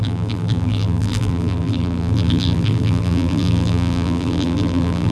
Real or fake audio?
fake